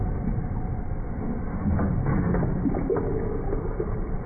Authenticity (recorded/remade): recorded